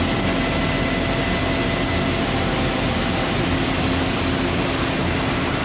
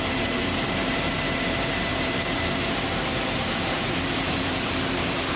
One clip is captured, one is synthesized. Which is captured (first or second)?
first